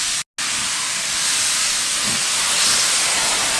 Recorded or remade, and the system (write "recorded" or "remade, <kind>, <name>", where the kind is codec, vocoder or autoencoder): recorded